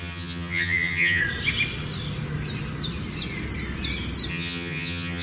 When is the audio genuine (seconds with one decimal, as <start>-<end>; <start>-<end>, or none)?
1.2-4.3